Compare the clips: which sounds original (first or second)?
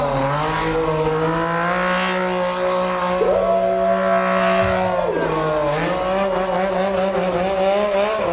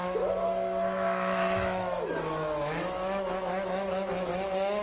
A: first